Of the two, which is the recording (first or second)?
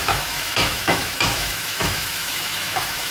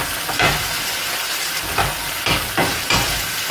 second